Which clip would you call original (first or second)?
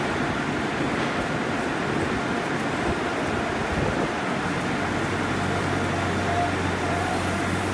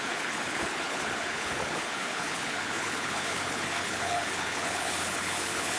first